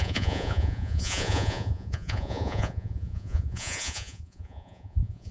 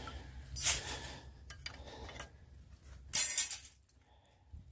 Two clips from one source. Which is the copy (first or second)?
first